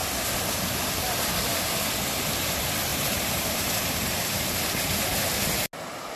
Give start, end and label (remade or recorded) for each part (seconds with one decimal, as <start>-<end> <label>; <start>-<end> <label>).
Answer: 0.0-2.9 recorded; 2.9-4.2 remade; 4.2-6.2 recorded